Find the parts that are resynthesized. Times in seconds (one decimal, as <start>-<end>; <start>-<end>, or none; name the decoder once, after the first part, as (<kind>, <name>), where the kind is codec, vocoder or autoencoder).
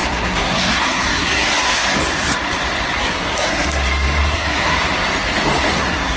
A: 0.0-1.8 (codec, SNAC); 3.0-4.7; 5.7-6.2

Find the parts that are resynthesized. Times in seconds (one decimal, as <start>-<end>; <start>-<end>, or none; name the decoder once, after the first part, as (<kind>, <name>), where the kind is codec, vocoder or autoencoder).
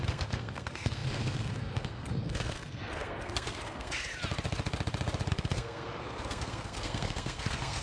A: 0.0-4.1 (codec, SNAC); 5.3-7.8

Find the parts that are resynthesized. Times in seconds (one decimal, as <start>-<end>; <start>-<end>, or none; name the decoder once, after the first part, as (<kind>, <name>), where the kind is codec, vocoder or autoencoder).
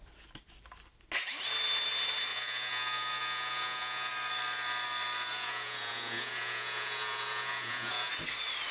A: 2.3-4.1 (vocoder, Vocos); 5.3-8.1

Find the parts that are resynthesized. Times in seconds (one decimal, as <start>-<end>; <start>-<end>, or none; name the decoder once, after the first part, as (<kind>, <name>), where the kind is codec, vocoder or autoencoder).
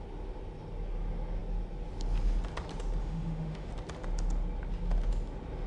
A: 3.0-3.7 (autoencoder, DAC-VAE)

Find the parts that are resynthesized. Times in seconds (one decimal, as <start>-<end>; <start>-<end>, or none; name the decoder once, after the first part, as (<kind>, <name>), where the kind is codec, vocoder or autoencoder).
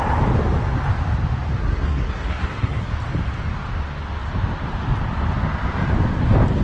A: 1.6-2.9 (codec, SNAC)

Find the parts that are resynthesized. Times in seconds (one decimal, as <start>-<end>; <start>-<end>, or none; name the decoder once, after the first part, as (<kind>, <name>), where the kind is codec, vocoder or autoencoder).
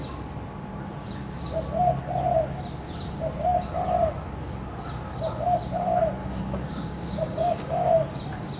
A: 6.2-7.9 (codec, DAC)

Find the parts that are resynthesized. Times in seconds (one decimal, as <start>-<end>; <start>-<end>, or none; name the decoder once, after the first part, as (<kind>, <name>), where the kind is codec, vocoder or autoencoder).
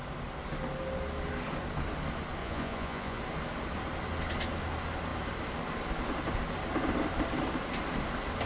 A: 2.4-3.2 (vocoder, Vocos)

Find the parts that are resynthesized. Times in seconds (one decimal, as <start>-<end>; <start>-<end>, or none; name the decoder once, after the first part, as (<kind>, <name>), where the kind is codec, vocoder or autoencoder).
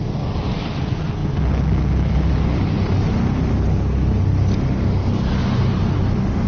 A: 5.4-5.9 (vocoder, BigVGAN v2)